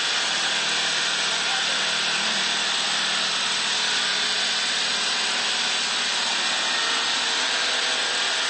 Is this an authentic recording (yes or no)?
yes